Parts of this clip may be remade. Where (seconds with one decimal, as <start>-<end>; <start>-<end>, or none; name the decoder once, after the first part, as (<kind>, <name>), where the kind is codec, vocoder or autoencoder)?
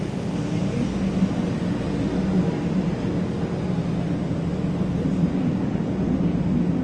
none